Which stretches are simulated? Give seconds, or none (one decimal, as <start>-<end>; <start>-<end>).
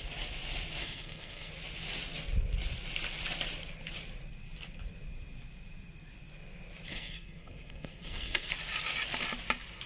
0.8-1.5; 6.9-8.5